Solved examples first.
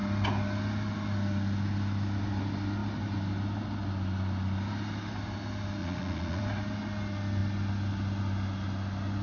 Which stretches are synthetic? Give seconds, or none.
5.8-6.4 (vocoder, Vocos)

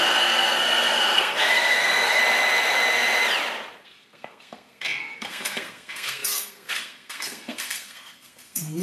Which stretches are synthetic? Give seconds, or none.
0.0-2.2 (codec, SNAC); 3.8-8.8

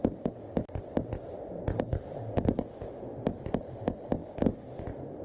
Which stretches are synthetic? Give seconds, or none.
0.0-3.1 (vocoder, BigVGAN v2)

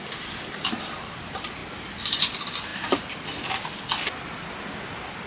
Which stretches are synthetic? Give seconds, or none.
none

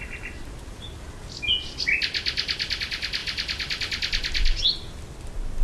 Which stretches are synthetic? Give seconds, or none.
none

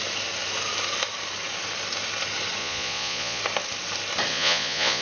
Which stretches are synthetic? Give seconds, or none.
2.6-3.4 (vocoder, Vocos); 4.3-5.0

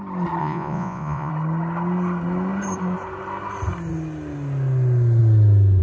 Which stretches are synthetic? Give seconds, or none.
0.4-1.3 (vocoder, Vocos)

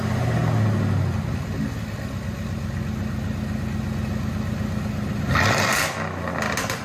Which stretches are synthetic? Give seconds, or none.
none